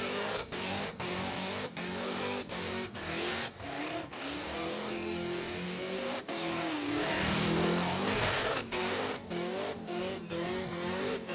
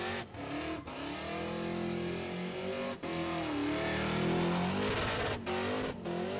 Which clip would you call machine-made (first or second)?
first